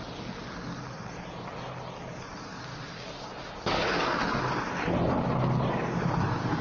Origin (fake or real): real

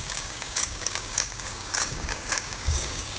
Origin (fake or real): fake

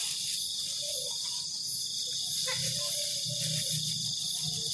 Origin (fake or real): real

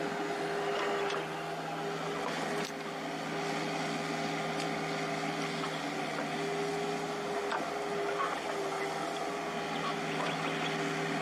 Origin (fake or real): real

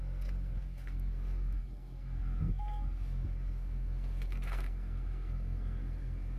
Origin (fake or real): fake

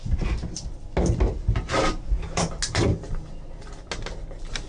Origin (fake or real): real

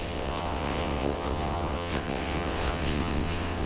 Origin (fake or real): fake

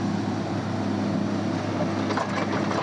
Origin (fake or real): real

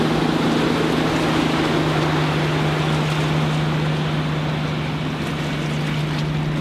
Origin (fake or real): real